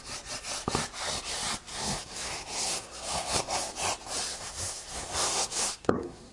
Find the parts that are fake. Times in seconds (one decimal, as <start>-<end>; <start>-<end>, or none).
1.7-3.7; 4.3-6.3

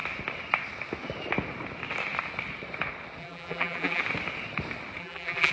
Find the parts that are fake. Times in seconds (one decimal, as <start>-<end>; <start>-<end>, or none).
3.2-4.0; 5.0-5.5

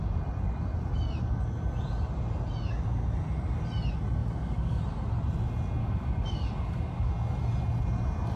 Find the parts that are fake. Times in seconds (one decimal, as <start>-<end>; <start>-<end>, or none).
4.2-4.8; 5.8-7.1

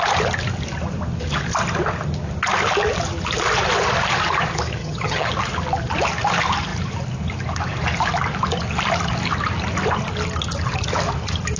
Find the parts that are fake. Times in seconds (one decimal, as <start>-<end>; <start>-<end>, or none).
4.8-5.3

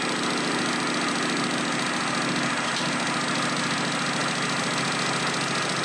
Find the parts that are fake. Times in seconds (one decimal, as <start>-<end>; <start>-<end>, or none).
none

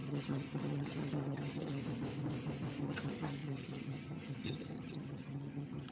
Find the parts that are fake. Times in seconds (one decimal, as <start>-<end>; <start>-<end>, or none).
0.0-1.8; 2.8-5.9

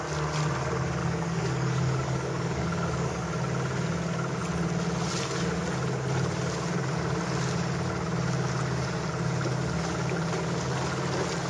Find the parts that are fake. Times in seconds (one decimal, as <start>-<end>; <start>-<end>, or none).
1.0-3.2